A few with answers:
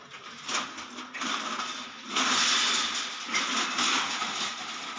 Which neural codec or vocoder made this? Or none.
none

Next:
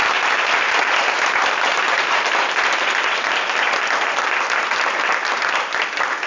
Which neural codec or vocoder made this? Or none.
vocoder, BigVGAN v2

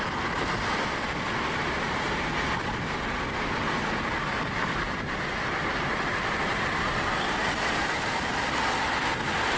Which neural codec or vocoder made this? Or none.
none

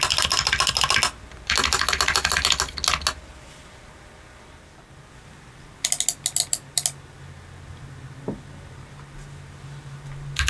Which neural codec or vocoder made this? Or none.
none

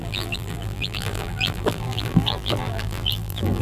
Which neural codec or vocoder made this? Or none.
vocoder, BigVGAN v2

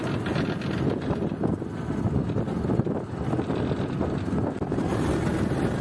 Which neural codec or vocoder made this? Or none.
none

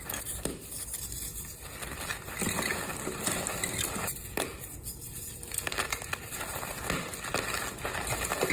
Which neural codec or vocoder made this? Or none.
none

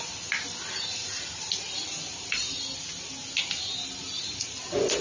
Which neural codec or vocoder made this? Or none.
none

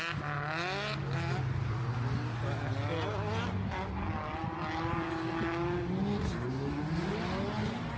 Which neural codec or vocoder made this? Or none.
none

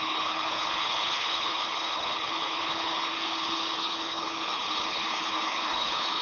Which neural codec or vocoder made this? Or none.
codec, HILCodec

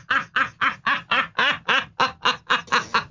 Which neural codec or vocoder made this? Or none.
none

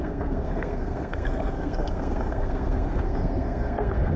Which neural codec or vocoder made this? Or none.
codec, SNAC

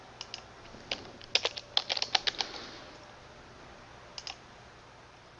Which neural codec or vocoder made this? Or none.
none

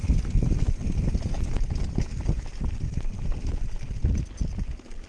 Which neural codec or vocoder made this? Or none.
none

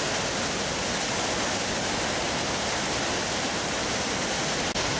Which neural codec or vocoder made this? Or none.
none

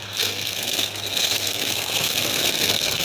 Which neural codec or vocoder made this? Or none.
codec, SNAC